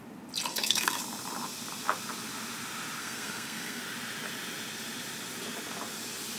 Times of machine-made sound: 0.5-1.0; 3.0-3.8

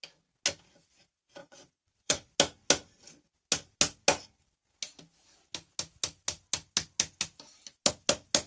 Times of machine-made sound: 1.4-2.3

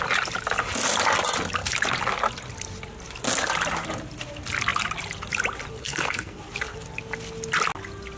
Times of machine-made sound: 5.8-6.4